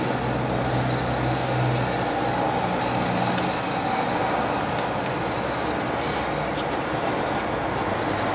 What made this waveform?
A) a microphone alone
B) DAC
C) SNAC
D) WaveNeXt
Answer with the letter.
A